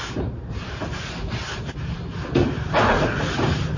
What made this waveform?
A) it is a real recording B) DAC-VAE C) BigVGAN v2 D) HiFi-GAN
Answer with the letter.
C